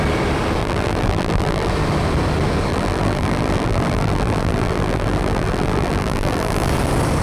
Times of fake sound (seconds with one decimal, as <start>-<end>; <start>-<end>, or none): 0.6-1.7; 2.7-6.7